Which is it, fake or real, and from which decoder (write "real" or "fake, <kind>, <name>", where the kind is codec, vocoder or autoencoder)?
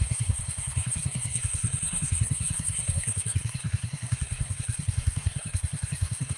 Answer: fake, codec, SNAC